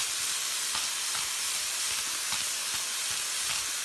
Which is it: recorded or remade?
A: recorded